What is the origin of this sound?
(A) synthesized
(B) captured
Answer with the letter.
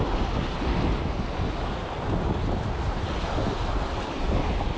B